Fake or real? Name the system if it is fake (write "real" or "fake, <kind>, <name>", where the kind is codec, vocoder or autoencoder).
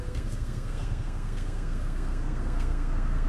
fake, codec, SNAC